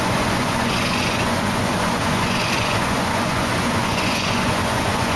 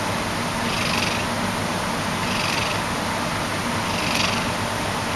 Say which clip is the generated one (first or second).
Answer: first